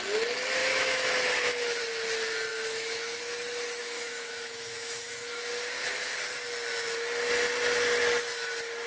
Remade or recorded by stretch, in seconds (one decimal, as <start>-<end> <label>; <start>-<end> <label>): 0.0-0.6 recorded; 0.6-1.8 remade; 1.8-2.5 recorded; 2.5-3.2 remade; 3.2-3.8 recorded; 3.8-5.5 remade; 5.5-8.9 recorded